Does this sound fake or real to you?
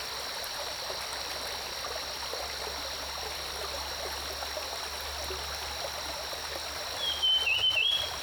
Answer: real